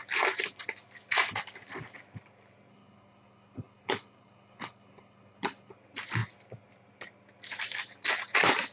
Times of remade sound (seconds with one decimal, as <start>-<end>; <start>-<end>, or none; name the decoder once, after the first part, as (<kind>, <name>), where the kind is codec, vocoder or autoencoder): 2.7-5.7 (codec, HILCodec)